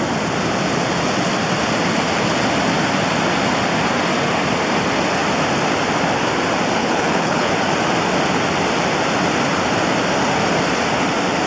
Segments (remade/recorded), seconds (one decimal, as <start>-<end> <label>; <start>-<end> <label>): 0.0-6.8 recorded; 6.8-7.5 remade; 7.5-11.5 recorded